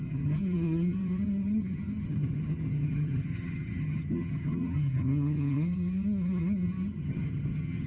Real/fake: fake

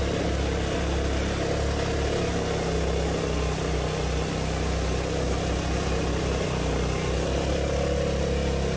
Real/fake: real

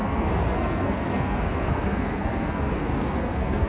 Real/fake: fake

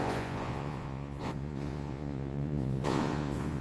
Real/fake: fake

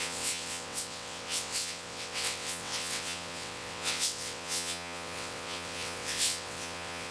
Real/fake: fake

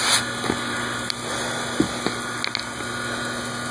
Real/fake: real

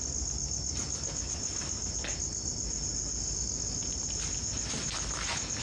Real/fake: real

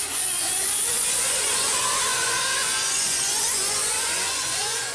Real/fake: fake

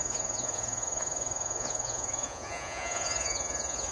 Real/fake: fake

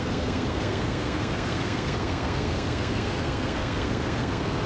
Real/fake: fake